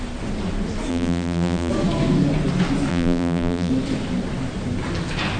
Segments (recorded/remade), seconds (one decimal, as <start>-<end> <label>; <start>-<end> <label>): 0.0-0.9 recorded; 0.9-1.7 remade; 1.7-2.9 recorded; 2.9-3.7 remade; 3.7-5.4 recorded